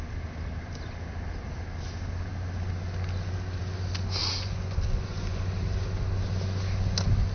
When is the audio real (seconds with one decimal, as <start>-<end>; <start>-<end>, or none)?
0.0-4.2; 5.4-7.3